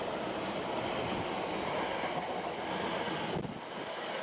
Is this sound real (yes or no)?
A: yes